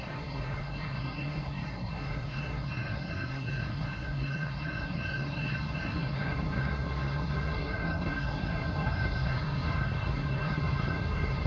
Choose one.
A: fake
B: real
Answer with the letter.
A